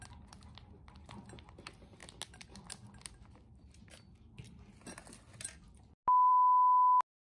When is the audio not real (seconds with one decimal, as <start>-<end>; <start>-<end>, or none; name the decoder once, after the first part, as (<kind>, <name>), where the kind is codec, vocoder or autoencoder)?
none